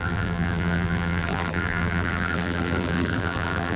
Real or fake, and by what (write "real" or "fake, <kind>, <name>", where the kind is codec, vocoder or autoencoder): fake, vocoder, BigVGAN v2